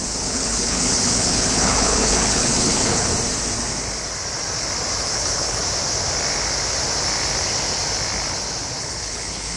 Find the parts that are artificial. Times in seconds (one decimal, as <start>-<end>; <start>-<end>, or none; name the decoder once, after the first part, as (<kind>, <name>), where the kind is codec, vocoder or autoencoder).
0.0-3.1 (codec, HILCodec); 5.0-5.6; 8.8-9.6